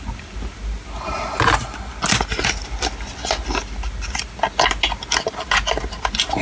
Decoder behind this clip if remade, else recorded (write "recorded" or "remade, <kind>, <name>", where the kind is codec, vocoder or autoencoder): recorded